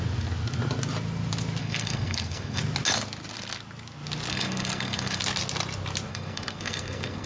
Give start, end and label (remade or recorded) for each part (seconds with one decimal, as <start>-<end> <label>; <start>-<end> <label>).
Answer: 0.0-1.6 recorded; 1.6-2.6 remade; 2.6-4.3 recorded; 4.3-5.2 remade; 5.2-6.1 recorded; 6.1-7.3 remade